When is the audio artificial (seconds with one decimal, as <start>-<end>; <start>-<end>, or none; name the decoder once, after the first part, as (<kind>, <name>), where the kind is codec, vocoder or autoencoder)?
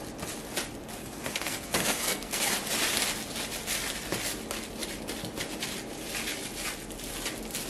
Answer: 1.0-2.5 (codec, SNAC)